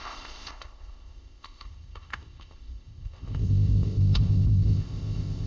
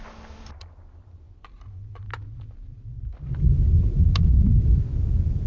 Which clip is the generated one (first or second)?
first